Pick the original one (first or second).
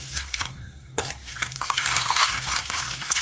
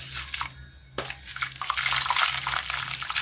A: second